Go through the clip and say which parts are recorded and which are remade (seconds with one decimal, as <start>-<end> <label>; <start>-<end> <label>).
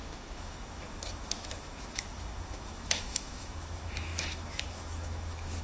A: 0.0-5.6 remade